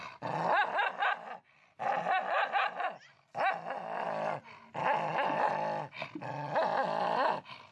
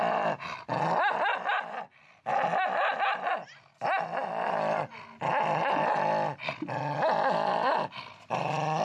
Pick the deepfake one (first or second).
first